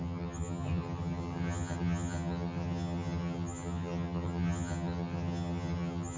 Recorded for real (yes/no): no